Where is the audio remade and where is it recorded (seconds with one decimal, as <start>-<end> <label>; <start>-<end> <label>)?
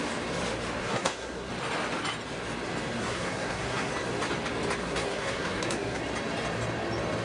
0.0-0.8 recorded; 0.8-1.5 remade; 1.5-3.0 recorded; 3.0-3.9 remade; 3.9-4.8 recorded; 4.8-6.0 remade; 6.0-7.2 recorded